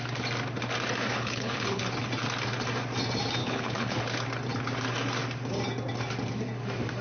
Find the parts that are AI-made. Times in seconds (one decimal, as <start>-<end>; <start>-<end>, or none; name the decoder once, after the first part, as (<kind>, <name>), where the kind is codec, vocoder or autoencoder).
1.1-1.8 (codec, HILCodec); 3.4-4.0